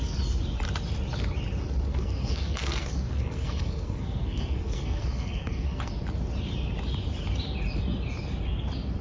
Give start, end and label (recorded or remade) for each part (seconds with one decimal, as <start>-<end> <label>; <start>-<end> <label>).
0.0-1.9 recorded; 1.9-5.9 remade; 5.9-9.0 recorded